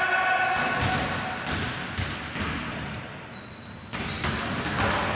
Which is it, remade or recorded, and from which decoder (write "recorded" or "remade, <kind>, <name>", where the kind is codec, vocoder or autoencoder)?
recorded